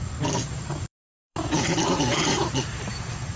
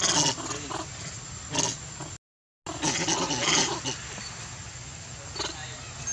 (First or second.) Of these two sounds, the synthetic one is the first